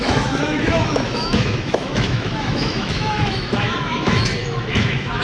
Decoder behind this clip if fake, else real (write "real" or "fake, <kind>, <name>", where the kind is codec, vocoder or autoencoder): fake, autoencoder, DAC-VAE